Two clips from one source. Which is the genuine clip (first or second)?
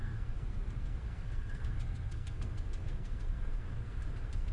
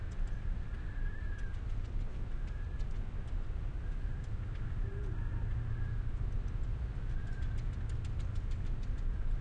second